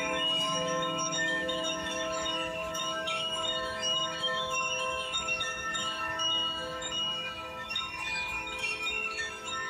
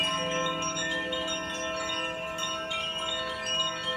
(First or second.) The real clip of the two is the second